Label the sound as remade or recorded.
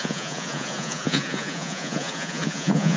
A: remade